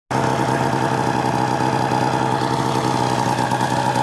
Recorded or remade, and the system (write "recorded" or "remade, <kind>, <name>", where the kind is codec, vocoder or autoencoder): recorded